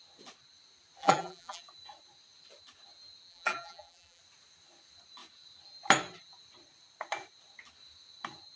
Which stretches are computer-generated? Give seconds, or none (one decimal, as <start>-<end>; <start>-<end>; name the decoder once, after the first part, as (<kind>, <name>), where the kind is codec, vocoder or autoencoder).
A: 1.0-1.6 (vocoder, BigVGAN v2); 3.3-4.2